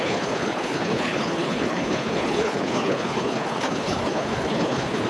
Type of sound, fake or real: fake